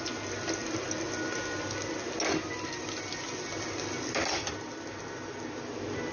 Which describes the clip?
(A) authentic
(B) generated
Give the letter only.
A